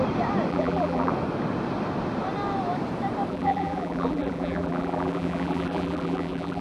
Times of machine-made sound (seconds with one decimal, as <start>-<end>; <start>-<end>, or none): 0.5-1.1; 3.3-6.6